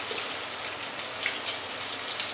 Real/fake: real